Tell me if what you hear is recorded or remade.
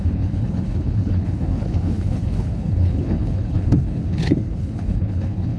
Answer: remade